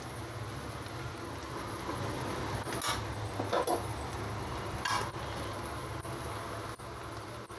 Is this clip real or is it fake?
real